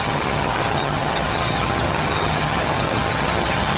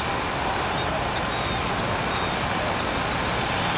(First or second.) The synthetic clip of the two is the first